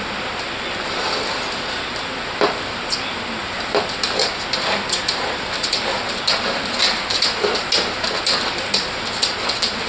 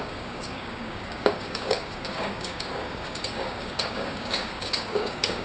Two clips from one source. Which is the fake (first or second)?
second